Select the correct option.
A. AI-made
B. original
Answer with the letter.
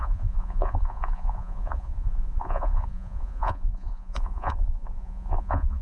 A